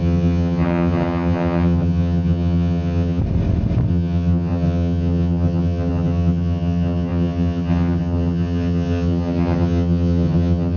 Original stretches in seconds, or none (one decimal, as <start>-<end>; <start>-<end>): 3.2-3.9